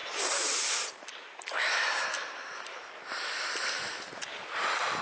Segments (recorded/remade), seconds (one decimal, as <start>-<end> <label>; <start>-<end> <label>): 0.0-3.0 remade; 3.0-4.3 recorded; 4.3-5.0 remade